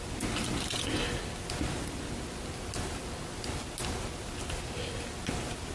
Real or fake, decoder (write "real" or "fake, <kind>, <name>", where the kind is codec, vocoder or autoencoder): real